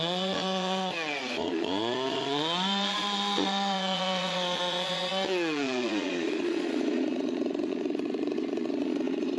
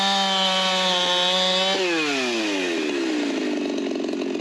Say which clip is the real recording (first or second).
second